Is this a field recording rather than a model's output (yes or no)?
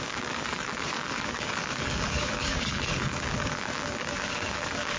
no